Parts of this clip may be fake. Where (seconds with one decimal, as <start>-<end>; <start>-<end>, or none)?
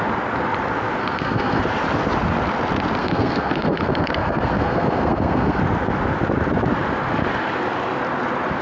1.0-1.6; 3.0-5.6